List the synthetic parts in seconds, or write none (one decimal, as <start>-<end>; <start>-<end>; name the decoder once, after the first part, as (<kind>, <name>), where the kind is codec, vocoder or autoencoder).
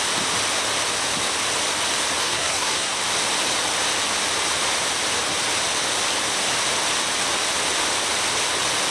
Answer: 2.2-3.0 (codec, SNAC)